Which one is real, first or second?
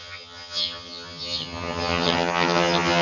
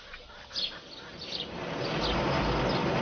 second